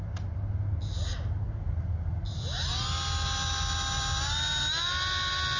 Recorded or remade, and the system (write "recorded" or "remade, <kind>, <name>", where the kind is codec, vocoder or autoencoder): recorded